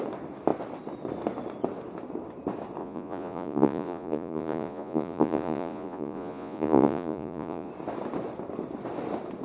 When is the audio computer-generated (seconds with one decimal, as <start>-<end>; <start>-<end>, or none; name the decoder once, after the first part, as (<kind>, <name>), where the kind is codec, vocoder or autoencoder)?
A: 2.8-7.7 (vocoder, Vocos)

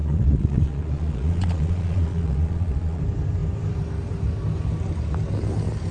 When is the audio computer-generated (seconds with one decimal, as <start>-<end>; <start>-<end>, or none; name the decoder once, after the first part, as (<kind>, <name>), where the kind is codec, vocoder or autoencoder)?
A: 0.0-3.0 (vocoder, Vocos)

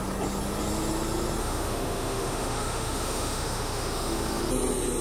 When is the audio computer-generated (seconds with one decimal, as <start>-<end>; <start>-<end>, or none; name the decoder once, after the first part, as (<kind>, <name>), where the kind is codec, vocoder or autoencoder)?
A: 1.4-4.4 (autoencoder, DAC-VAE)